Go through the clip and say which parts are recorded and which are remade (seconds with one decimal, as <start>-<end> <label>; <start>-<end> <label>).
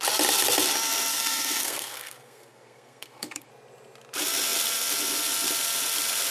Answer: 0.0-1.1 recorded; 1.1-3.5 remade; 3.5-6.3 recorded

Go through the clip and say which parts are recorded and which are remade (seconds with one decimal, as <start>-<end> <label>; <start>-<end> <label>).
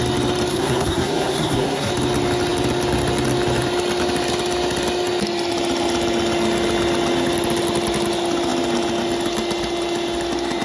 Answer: 0.0-0.5 recorded; 0.5-1.9 remade; 1.9-10.6 recorded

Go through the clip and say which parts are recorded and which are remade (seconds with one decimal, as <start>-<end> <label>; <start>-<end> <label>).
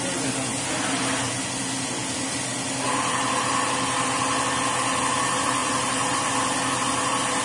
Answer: 0.0-2.5 recorded; 2.5-4.4 remade; 4.4-5.6 recorded; 5.6-6.3 remade; 6.3-7.4 recorded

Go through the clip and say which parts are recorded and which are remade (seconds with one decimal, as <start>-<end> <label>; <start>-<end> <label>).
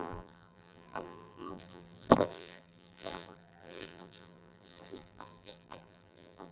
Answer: 0.0-6.5 remade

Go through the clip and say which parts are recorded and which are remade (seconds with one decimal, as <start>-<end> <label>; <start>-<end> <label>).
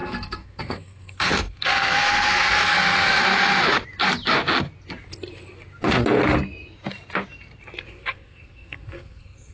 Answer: 0.0-3.2 remade; 3.2-7.9 recorded; 7.9-9.5 remade